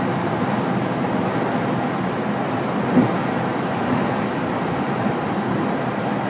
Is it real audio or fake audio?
real